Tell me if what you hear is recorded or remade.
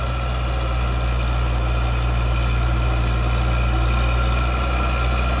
recorded